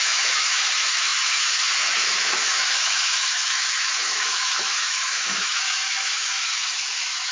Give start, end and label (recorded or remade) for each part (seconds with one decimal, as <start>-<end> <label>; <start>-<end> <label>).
0.0-7.3 remade